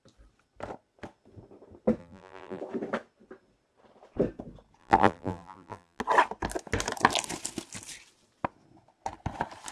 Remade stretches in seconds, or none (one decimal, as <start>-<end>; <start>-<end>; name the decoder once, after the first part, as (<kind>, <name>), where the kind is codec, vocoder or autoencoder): 2.0-2.6 (vocoder, BigVGAN v2); 4.8-6.0